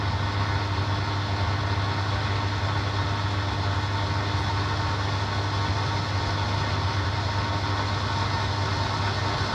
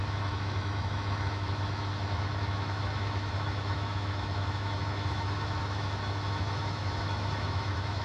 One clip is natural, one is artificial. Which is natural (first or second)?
first